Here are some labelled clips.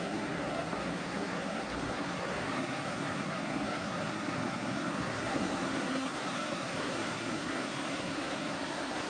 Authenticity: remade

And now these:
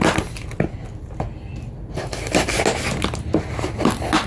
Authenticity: recorded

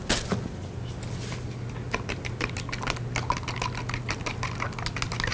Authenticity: recorded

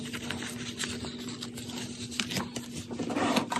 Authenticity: recorded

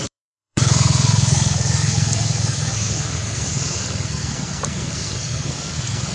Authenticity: remade